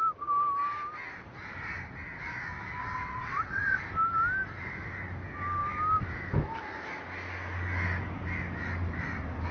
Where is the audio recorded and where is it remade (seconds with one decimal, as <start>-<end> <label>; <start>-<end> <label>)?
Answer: 0.0-2.8 recorded; 2.8-3.8 remade; 3.8-9.5 recorded